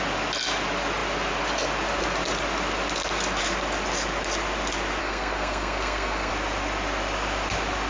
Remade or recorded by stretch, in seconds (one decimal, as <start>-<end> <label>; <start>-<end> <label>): 0.0-5.0 recorded; 5.0-6.3 remade; 6.3-7.9 recorded